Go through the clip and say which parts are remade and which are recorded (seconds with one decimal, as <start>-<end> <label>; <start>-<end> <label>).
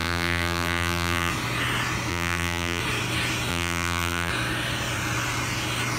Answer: 0.0-1.3 remade; 1.3-2.1 recorded; 2.1-2.8 remade; 2.8-3.5 recorded; 3.5-4.3 remade; 4.3-6.0 recorded